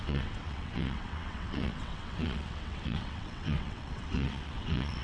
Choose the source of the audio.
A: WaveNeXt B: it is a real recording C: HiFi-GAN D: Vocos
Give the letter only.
A